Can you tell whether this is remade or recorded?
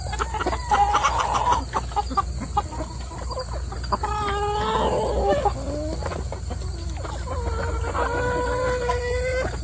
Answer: recorded